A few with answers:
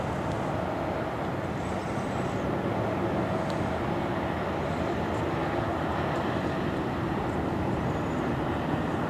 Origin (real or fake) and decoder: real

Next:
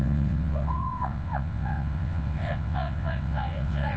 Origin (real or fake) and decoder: fake, vocoder, WaveNeXt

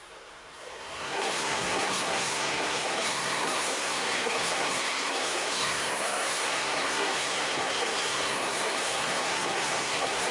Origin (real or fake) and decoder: fake, codec, SNAC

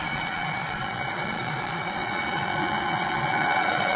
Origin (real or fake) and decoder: fake, vocoder, Vocos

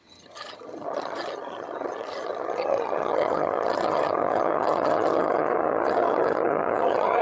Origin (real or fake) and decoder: fake, vocoder, HiFi-GAN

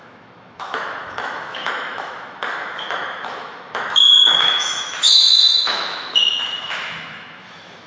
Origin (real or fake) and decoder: fake, autoencoder, DAC-VAE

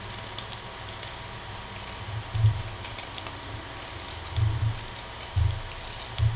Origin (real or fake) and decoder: real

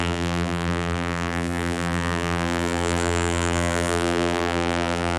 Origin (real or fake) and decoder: fake, vocoder, BigVGAN v2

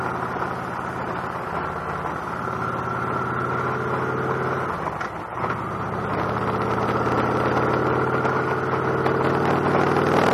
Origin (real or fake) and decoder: real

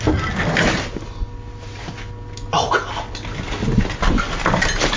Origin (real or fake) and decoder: real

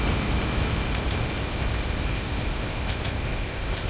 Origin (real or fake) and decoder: fake, codec, ZipCodec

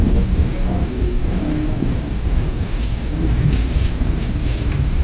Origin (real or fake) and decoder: fake, codec, DAC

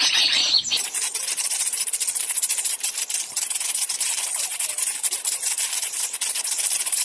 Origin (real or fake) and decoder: fake, vocoder, BigVGAN v2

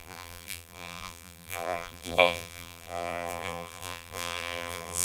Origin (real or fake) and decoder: fake, vocoder, BigVGAN v2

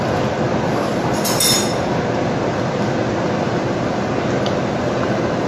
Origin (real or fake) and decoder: real